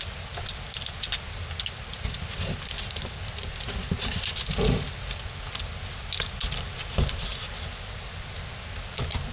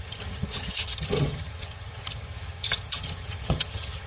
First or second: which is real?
first